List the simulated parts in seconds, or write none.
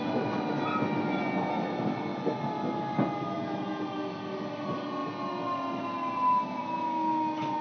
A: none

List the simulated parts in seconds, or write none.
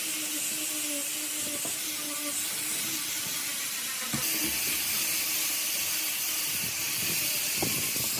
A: none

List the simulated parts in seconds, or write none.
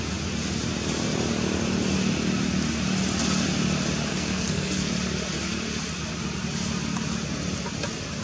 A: 4.1-4.9 (codec, SNAC)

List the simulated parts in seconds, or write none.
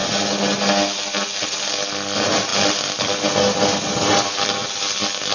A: none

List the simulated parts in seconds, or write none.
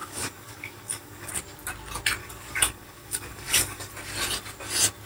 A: 0.0-1.3 (codec, DAC); 2.2-3.9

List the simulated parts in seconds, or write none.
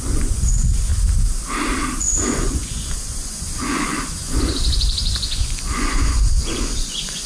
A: 0.0-0.9 (vocoder, Vocos); 2.0-7.3